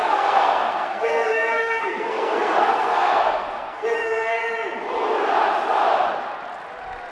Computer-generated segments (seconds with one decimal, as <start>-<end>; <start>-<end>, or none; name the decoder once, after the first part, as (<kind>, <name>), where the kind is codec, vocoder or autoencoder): 0.0-4.4 (codec, SNAC)